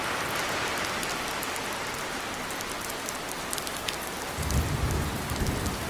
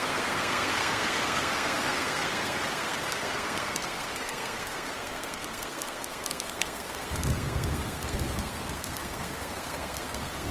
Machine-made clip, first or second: second